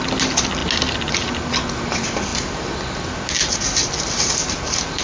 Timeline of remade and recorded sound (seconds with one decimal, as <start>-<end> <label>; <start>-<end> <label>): 0.0-5.0 recorded